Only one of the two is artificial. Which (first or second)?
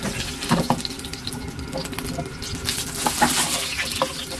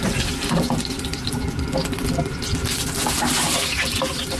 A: second